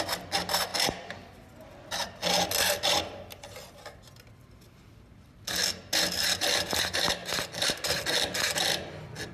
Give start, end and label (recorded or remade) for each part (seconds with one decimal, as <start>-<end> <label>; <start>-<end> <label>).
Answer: 0.0-9.3 recorded